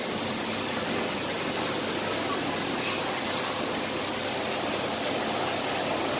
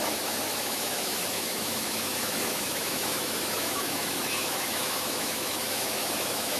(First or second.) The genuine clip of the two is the first